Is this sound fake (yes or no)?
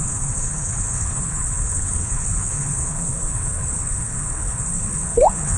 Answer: yes